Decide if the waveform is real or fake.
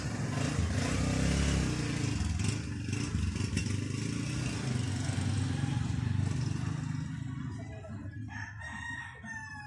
real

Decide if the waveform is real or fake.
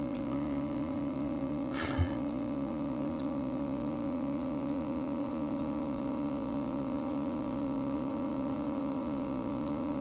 fake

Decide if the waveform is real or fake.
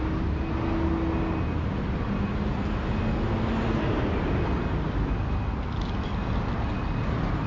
real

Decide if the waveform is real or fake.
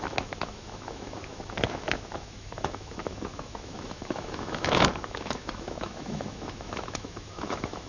fake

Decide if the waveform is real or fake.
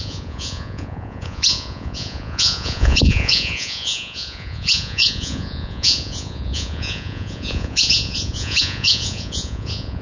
fake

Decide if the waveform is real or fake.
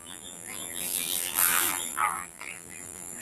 fake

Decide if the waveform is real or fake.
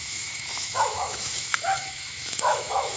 fake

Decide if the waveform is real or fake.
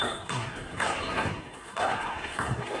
fake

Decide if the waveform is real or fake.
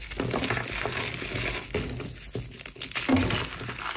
real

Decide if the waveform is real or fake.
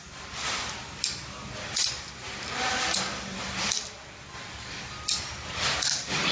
real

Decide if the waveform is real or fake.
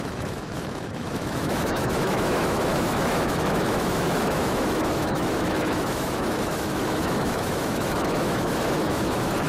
fake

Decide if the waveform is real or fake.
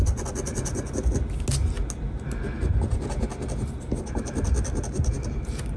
real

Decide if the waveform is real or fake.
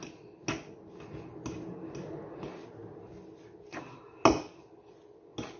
real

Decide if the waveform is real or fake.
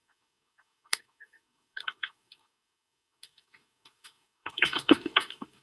fake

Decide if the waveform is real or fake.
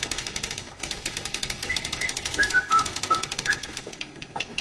fake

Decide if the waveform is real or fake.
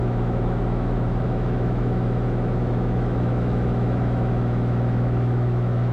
fake